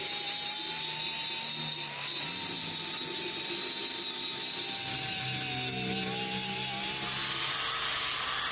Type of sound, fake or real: real